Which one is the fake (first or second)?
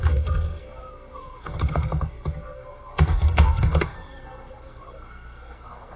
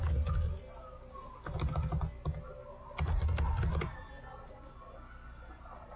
first